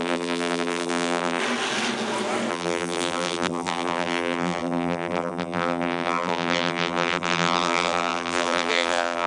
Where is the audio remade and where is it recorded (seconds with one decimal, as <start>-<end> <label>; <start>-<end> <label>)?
0.0-1.4 remade; 1.4-2.5 recorded; 2.5-9.3 remade